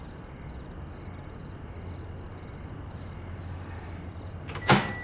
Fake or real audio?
real